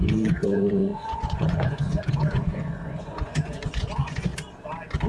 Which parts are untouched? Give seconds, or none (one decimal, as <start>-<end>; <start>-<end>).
4.3-5.1